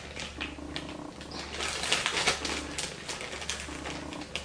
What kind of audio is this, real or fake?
real